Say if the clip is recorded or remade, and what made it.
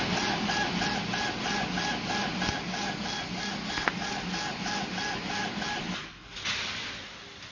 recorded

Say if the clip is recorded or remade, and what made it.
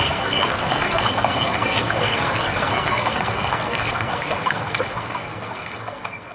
remade, codec, SNAC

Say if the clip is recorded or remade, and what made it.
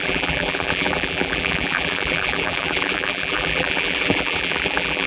remade, vocoder, BigVGAN v2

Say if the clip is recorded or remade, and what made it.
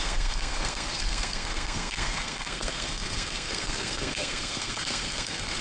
remade, codec, SNAC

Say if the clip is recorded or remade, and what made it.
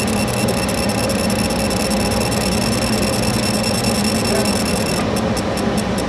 recorded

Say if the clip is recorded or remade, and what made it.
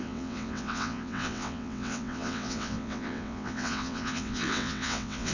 remade, vocoder, WaveNeXt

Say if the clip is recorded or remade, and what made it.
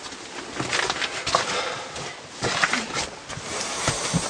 recorded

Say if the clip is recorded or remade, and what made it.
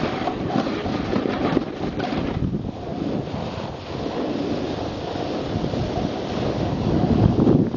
recorded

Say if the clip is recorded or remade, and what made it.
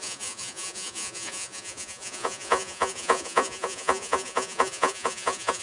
remade, vocoder, Vocos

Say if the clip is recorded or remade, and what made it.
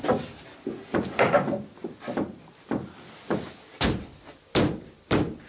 recorded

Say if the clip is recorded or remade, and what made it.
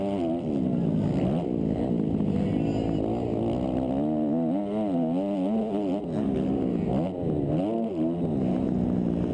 recorded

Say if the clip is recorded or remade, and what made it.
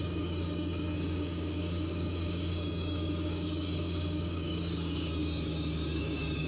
remade, codec, DAC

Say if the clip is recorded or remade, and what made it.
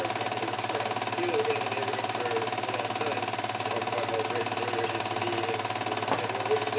recorded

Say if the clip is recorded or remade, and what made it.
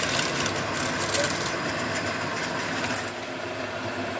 recorded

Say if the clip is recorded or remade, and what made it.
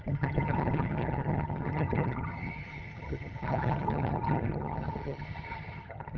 remade, vocoder, HiFi-GAN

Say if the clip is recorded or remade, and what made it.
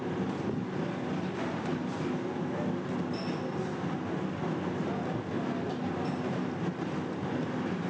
recorded